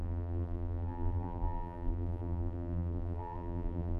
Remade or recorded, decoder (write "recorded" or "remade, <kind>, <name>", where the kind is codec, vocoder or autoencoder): remade, vocoder, BigVGAN v2